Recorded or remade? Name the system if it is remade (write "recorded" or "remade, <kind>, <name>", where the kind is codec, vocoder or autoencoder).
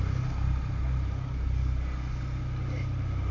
recorded